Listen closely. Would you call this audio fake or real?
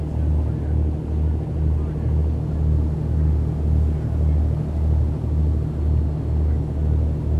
real